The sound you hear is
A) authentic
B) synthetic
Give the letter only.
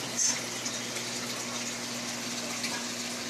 A